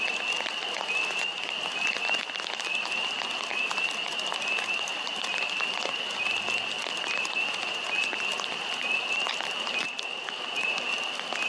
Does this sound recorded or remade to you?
remade